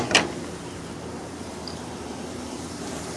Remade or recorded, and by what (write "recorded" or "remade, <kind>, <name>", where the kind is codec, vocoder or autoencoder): remade, vocoder, BigVGAN v2